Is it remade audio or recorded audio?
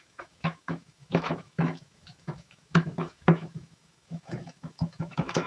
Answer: remade